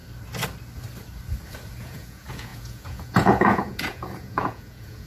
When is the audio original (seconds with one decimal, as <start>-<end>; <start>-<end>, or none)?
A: 0.0-1.8